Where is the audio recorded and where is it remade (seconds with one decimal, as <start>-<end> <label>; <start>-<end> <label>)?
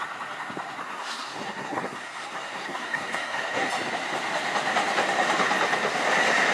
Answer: 0.0-0.8 recorded; 0.8-3.7 remade; 3.7-6.5 recorded